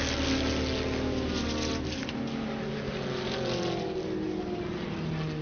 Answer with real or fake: real